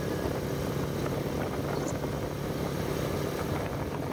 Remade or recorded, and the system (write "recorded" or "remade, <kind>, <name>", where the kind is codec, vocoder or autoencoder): recorded